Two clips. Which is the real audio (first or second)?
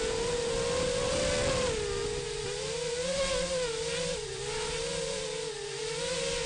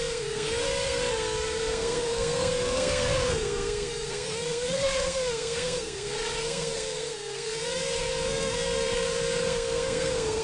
first